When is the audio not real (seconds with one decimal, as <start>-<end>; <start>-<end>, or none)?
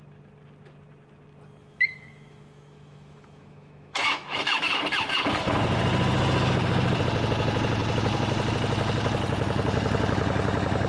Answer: 1.6-4.8